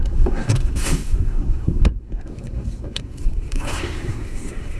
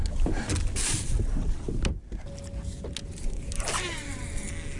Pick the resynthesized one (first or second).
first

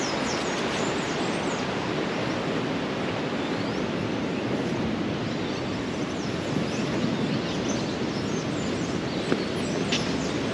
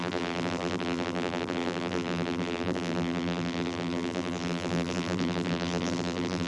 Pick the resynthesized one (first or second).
second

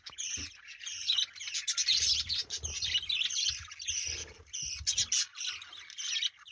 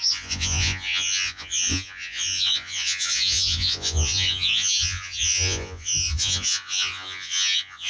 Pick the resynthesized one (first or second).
second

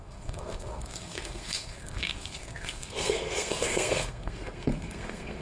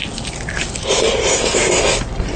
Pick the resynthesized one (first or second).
first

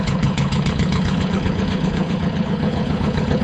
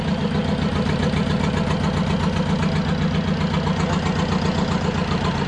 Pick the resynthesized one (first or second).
first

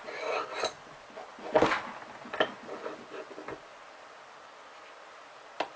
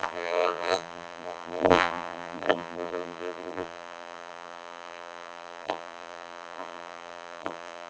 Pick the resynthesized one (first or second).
second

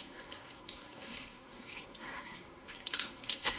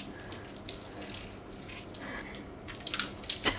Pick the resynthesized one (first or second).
first